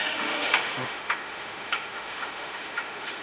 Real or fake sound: fake